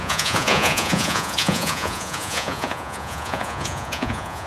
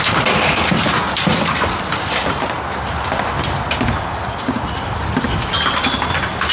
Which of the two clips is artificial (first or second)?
first